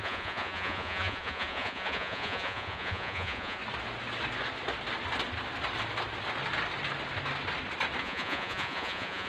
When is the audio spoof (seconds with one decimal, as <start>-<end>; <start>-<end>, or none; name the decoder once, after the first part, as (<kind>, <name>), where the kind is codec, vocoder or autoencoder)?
0.0-3.6 (vocoder, Vocos); 8.0-9.3